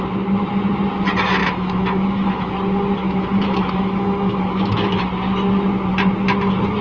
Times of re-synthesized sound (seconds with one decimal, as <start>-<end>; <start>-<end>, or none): 1.4-2.5; 3.0-5.0